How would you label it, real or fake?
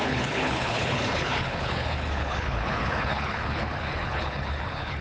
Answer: fake